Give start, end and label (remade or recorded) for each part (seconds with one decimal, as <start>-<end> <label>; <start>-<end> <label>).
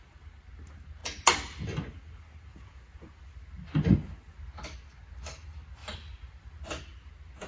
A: 0.0-2.5 recorded; 2.5-3.2 remade; 3.2-7.5 recorded